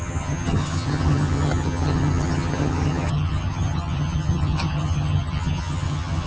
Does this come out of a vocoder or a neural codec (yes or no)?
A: yes